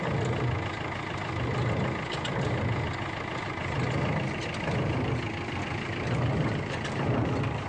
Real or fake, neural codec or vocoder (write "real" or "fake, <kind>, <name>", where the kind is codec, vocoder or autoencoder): real